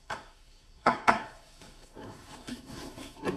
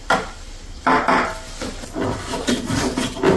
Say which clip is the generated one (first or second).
first